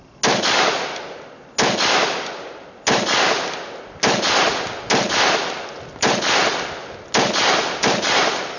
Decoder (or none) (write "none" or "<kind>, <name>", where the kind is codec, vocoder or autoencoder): none